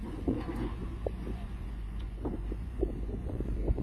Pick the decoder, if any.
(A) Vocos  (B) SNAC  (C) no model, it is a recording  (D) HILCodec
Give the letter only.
A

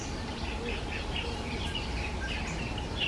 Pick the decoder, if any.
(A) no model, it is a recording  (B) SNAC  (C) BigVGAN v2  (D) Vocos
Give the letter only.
A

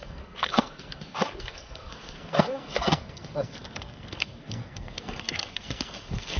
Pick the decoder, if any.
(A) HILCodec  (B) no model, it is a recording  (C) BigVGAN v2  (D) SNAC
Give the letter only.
D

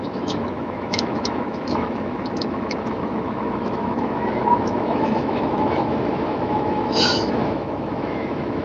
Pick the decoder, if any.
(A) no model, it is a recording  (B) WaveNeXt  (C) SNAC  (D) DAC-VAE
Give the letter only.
D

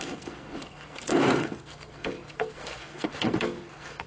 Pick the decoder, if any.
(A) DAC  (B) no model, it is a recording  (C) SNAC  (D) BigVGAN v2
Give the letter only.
C